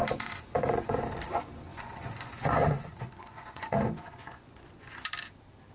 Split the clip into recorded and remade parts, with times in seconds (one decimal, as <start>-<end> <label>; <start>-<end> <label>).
0.0-1.0 remade; 1.0-1.7 recorded; 1.7-5.1 remade; 5.1-5.7 recorded